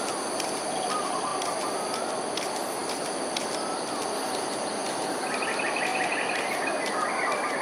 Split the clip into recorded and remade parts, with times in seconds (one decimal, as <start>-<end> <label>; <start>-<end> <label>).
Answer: 0.0-7.6 recorded